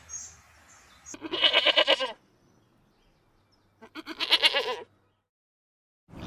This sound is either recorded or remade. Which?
recorded